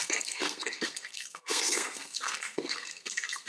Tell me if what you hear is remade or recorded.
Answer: remade